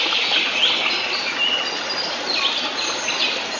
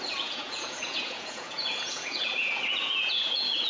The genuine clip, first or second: first